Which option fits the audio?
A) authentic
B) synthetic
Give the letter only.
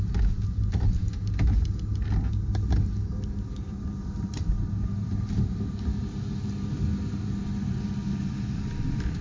A